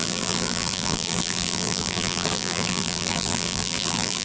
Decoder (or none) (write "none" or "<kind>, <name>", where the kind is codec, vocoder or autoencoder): vocoder, BigVGAN v2